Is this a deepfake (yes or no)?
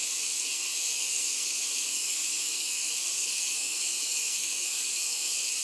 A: yes